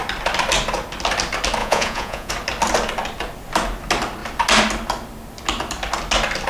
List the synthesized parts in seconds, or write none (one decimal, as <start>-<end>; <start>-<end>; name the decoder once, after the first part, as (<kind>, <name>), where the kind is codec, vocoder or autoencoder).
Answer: 1.6-2.3 (vocoder, Vocos)

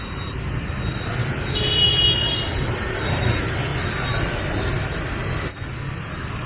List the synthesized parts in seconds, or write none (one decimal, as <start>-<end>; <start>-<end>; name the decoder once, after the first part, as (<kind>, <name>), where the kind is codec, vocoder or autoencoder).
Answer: 1.2-1.7 (vocoder, Vocos)